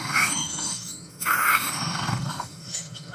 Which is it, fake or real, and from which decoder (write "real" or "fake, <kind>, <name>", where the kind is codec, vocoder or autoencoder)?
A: fake, autoencoder, DAC-VAE